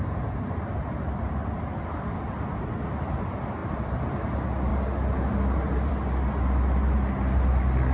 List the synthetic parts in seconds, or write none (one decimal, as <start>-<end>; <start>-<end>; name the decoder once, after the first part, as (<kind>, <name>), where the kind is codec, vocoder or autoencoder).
3.6-4.1 (vocoder, BigVGAN v2)